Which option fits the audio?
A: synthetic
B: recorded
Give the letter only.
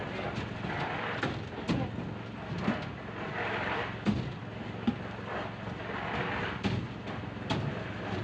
B